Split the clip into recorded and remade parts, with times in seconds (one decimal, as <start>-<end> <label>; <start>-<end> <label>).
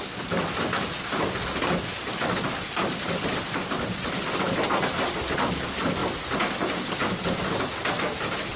0.0-8.6 recorded